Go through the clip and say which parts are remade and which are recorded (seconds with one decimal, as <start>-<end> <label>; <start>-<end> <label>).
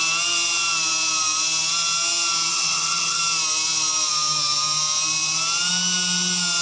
0.0-2.5 recorded; 2.5-3.2 remade; 3.2-6.6 recorded